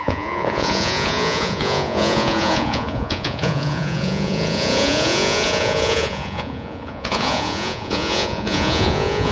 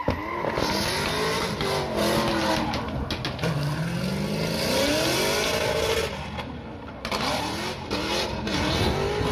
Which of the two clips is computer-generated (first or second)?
first